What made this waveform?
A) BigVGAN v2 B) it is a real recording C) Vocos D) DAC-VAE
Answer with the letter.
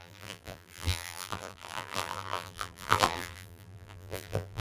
A